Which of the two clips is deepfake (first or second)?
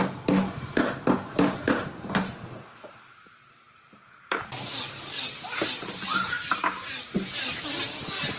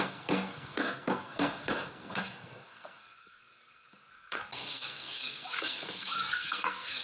second